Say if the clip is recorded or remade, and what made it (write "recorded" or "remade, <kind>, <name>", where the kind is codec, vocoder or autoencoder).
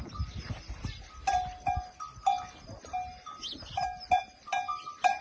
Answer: recorded